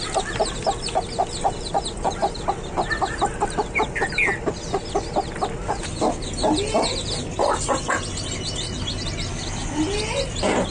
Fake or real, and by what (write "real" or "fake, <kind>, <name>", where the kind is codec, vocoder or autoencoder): real